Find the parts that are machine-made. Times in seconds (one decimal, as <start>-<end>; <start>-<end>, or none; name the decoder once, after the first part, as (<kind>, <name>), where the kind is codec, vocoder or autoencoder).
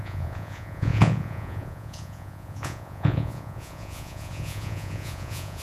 0.0-5.6 (vocoder, Vocos)